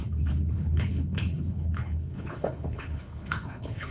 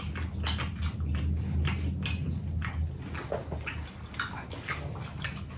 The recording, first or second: second